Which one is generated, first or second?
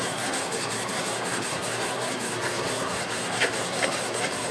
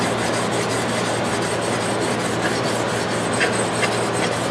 first